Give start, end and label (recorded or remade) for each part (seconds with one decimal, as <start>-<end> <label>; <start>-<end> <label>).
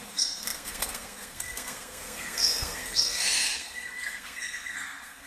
0.0-5.3 remade